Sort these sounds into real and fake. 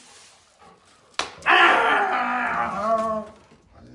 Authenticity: real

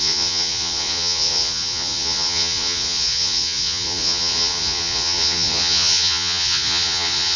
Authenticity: fake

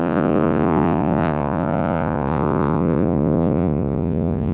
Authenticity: fake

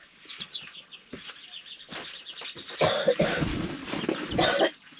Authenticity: real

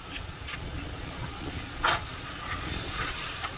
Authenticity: fake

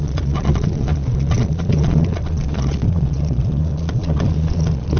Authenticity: fake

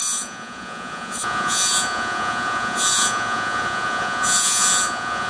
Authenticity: fake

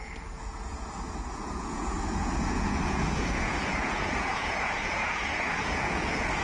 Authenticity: fake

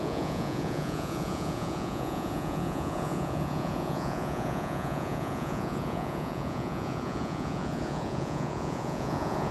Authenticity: fake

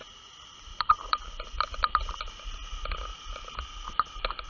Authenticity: real